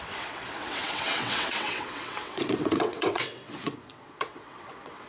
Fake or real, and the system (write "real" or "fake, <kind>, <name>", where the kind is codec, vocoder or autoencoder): fake, vocoder, WaveNeXt